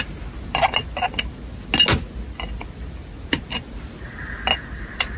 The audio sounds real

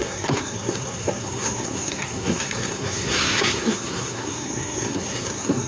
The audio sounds fake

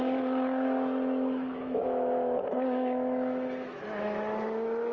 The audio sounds fake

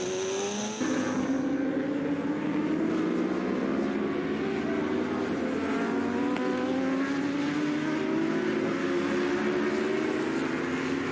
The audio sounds real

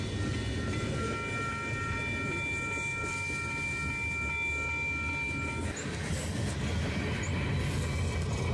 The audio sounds real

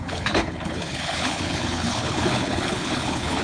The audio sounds fake